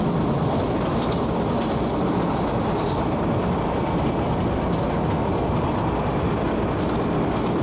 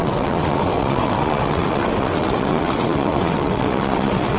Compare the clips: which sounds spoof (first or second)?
second